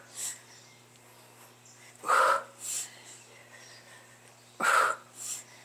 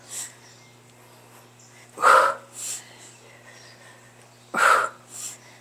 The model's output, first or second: first